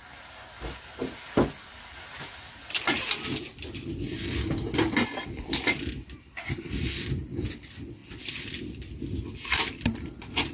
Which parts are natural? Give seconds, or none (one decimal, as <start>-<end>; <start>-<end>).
0.0-10.5